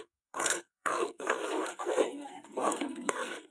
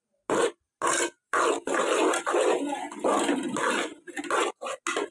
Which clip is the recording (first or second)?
second